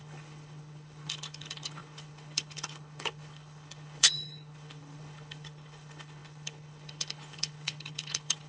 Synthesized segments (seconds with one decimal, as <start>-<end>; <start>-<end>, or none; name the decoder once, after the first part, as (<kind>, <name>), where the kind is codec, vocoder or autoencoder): 0.0-8.5 (codec, HILCodec)